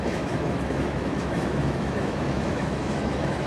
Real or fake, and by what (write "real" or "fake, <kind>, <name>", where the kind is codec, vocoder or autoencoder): fake, autoencoder, DAC-VAE